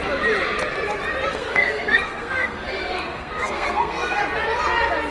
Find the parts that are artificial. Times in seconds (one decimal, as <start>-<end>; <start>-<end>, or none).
1.3-4.2

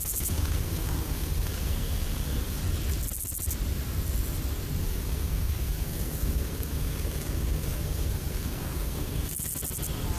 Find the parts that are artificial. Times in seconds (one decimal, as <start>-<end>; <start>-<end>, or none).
0.0-2.6; 4.8-9.5

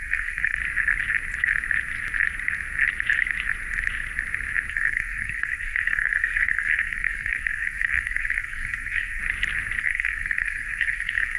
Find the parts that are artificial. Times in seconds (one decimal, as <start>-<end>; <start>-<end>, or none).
0.0-0.6; 4.7-9.2; 9.8-11.4